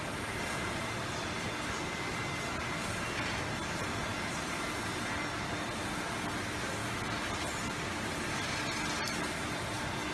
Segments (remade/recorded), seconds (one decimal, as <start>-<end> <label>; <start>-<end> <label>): 0.0-10.1 recorded